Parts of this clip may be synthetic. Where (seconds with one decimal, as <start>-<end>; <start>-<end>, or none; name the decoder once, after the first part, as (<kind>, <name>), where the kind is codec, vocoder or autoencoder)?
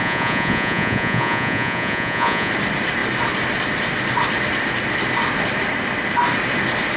0.0-2.5 (vocoder, Vocos)